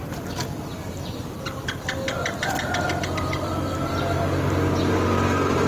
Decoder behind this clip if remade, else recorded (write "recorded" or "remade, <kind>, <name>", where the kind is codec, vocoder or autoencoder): recorded